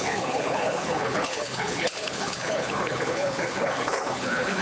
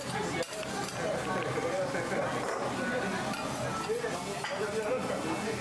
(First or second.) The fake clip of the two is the first